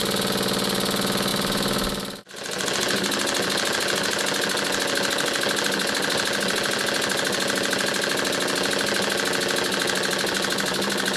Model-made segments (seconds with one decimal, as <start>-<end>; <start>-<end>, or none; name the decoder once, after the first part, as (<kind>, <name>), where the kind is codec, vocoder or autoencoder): 1.3-2.2 (vocoder, BigVGAN v2)